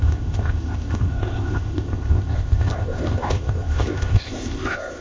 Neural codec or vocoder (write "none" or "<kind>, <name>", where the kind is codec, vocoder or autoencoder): codec, ZipCodec